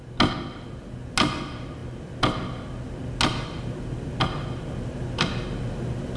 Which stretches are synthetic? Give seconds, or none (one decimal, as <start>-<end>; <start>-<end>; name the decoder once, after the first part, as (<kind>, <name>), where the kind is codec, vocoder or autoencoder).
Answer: none